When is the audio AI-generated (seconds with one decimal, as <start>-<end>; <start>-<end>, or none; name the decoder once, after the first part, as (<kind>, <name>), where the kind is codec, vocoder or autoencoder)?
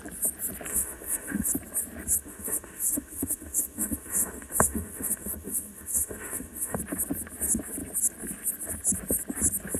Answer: 0.7-1.5 (autoencoder, DAC-VAE); 2.2-6.8